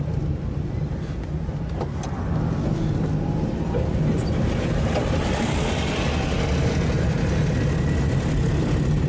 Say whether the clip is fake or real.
real